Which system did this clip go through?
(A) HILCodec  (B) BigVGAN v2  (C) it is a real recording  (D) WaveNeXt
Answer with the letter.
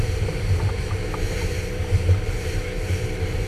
B